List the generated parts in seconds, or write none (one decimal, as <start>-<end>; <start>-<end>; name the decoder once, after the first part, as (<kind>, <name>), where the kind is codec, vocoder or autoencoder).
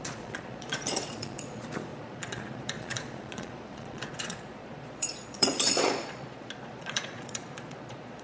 0.0-8.2 (vocoder, Vocos)